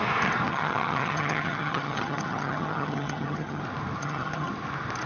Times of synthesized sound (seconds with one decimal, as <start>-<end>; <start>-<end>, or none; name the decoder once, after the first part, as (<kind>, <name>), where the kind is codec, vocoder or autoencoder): 0.5-3.6 (vocoder, HiFi-GAN); 4.0-4.5